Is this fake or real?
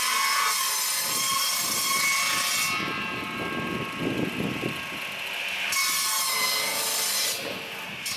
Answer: real